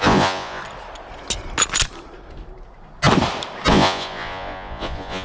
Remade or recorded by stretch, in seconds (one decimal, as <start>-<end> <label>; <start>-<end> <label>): 0.0-0.6 remade; 0.6-3.7 recorded; 3.7-5.2 remade